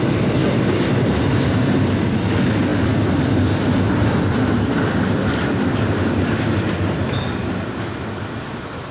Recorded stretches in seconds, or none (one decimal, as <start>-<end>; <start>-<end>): 0.0-0.4; 1.1-8.9